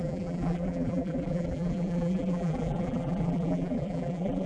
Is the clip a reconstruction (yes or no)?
yes